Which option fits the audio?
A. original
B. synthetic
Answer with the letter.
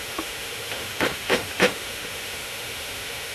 B